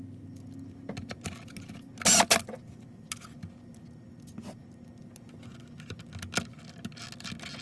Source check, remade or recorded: recorded